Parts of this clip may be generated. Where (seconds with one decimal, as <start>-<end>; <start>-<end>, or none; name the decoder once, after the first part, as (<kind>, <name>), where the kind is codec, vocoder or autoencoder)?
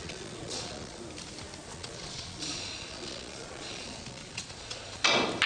0.0-1.0 (vocoder, Vocos); 1.7-5.0